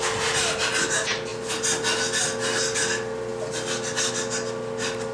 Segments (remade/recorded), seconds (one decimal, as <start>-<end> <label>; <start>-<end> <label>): 0.0-5.1 recorded